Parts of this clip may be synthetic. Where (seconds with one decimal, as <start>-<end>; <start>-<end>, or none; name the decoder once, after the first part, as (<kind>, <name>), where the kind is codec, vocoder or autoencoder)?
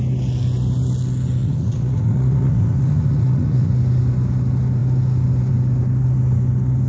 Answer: 1.4-3.7 (vocoder, Vocos)